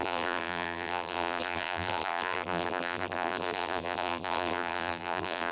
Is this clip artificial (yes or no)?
yes